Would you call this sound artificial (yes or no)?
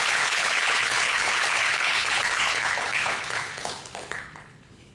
yes